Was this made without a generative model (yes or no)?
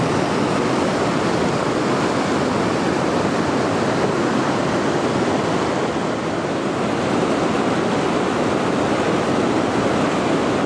yes